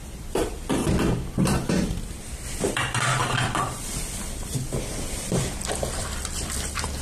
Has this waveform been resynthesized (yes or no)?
yes